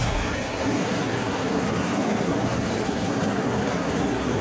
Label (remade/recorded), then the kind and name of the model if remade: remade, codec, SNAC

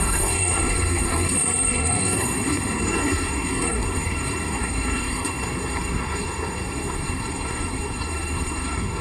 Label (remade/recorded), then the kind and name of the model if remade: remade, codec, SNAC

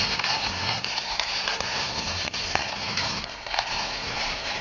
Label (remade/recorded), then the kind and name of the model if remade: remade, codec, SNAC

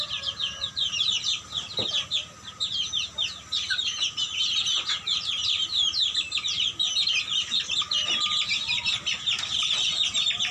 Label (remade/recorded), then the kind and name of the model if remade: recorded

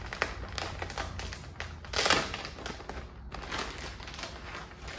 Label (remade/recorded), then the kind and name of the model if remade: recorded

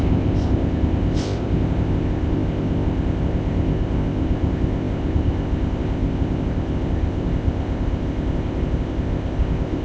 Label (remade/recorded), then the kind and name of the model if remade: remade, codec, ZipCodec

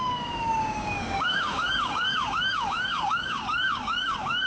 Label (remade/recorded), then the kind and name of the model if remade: remade, codec, DAC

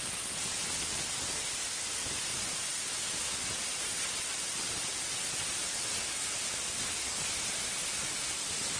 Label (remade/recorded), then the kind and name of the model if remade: recorded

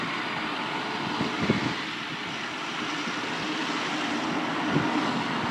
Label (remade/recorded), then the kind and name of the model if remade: recorded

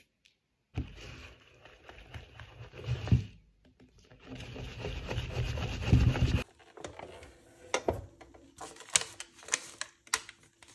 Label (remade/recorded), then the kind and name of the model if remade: recorded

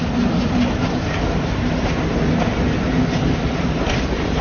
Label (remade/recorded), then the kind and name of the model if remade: recorded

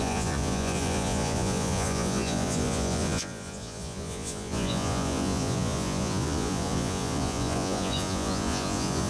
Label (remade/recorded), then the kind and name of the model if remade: remade, vocoder, Vocos